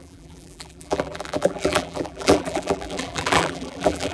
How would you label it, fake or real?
fake